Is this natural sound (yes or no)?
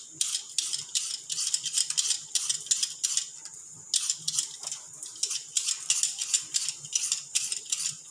yes